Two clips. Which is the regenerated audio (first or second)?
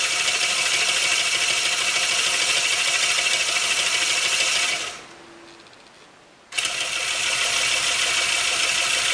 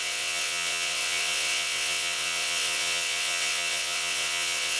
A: second